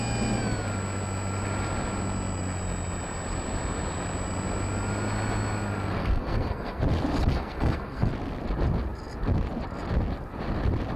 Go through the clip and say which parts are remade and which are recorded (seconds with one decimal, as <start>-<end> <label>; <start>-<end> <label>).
0.0-6.0 recorded; 6.0-6.8 remade; 6.8-7.2 recorded; 7.2-8.1 remade; 8.1-11.0 recorded